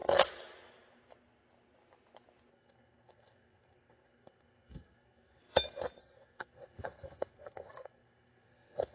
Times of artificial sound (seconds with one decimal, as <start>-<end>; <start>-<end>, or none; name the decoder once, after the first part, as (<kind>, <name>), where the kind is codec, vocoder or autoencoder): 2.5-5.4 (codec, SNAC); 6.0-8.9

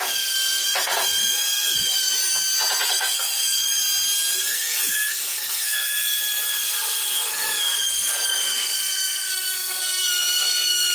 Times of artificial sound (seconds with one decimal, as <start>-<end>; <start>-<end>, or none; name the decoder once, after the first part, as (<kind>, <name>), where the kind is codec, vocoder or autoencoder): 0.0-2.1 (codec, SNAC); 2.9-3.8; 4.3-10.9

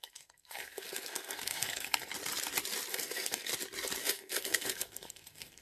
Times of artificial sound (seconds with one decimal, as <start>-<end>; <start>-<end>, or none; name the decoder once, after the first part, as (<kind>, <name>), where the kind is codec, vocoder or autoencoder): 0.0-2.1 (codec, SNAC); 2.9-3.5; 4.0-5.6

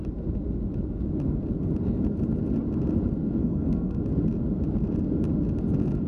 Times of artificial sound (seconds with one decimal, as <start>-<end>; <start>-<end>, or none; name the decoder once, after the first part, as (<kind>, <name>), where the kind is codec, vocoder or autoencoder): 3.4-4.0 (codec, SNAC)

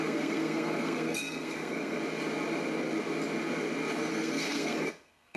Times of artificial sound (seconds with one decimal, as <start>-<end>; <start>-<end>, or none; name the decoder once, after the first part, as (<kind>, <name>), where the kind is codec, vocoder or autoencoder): 0.0-2.0 (codec, SNAC); 4.1-5.4

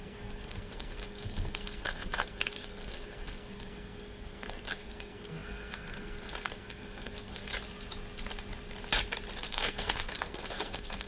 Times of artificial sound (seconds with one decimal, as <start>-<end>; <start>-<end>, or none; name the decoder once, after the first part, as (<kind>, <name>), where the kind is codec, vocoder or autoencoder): 0.0-7.5 (codec, SNAC); 9.4-11.1